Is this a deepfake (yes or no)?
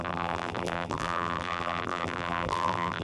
yes